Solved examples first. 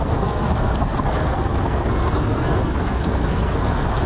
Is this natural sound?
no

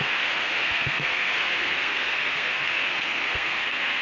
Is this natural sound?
no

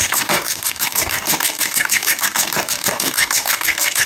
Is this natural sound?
no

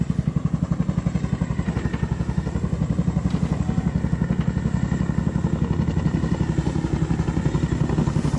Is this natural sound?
yes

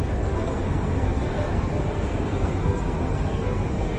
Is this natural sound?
no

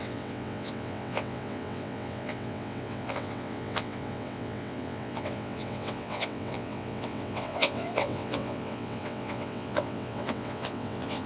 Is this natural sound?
no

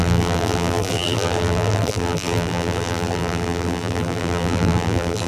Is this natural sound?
no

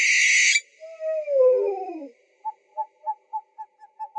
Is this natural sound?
yes